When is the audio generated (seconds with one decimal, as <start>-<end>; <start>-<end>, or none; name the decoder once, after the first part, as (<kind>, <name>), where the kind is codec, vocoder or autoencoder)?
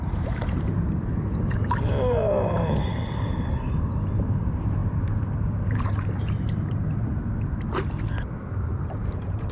0.0-4.8 (vocoder, BigVGAN v2); 5.8-7.1; 8.5-9.5